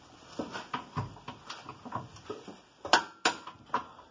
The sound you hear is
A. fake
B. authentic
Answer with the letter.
B